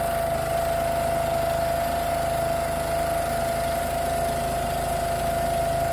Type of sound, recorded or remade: recorded